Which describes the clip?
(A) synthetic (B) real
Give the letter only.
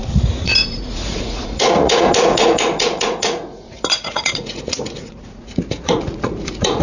A